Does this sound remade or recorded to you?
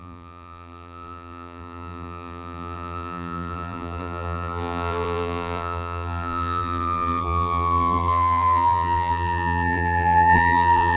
remade